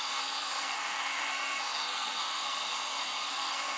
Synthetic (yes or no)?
yes